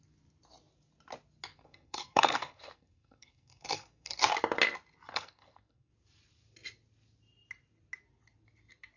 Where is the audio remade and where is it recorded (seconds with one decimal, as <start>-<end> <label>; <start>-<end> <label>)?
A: 0.0-1.5 recorded; 1.5-4.2 remade; 4.2-5.1 recorded; 5.1-5.9 remade; 5.9-9.0 recorded